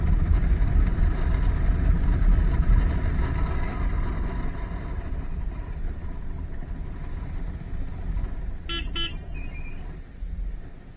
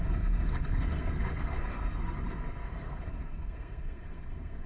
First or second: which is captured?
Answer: first